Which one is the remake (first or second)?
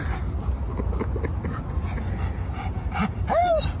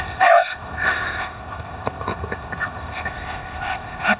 second